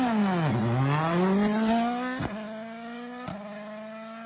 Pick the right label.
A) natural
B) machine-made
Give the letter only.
A